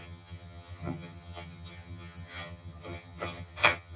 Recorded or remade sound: remade